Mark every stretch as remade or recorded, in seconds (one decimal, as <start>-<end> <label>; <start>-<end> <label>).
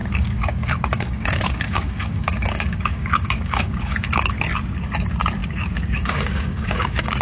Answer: 0.0-4.3 remade; 4.3-5.4 recorded; 5.4-7.2 remade